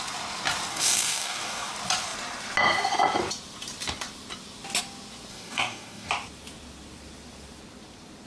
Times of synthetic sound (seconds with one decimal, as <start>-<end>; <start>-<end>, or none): 0.7-1.7; 5.3-6.1